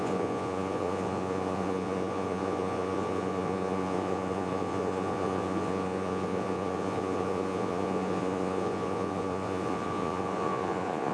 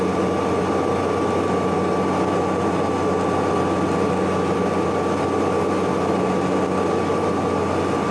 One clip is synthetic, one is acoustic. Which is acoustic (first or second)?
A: second